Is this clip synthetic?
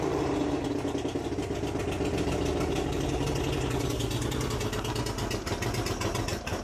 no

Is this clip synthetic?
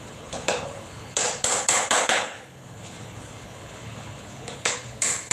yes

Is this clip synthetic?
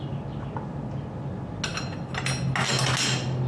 no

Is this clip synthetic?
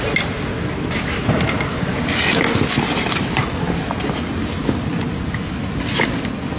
no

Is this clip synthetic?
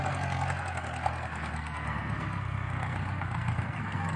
yes